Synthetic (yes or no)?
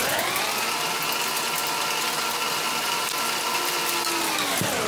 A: no